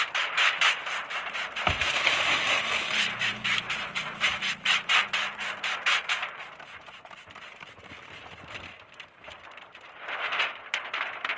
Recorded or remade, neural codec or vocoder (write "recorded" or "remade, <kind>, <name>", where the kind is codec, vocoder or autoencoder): remade, vocoder, BigVGAN v2